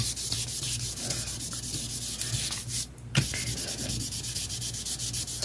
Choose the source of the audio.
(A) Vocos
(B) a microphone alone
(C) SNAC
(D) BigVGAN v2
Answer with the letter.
B